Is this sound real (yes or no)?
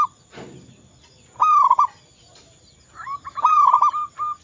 yes